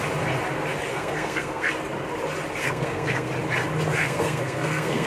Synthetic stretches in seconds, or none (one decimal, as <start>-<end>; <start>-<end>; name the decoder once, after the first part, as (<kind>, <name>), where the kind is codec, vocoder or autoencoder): 0.9-1.7 (codec, SNAC); 2.6-3.3; 4.0-5.1